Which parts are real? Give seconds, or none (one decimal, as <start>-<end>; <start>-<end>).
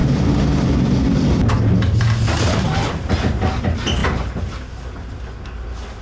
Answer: 0.0-6.0